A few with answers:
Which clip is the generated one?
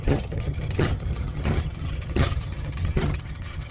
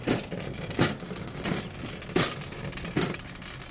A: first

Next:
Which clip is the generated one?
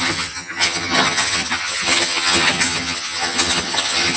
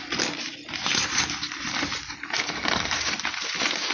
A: first